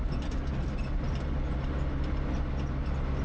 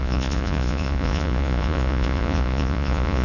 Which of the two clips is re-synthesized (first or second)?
second